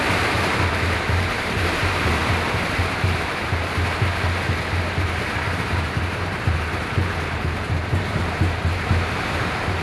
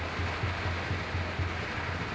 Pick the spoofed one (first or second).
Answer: first